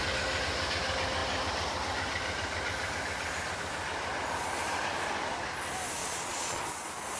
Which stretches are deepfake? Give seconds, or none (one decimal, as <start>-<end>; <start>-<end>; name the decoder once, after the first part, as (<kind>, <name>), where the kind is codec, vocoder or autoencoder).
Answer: 6.0-6.6 (vocoder, Vocos)